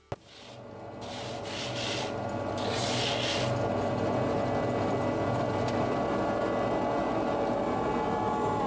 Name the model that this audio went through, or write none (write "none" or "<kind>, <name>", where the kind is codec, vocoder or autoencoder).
none